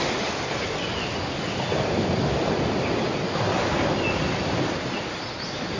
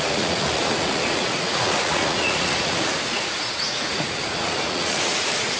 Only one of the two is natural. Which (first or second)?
first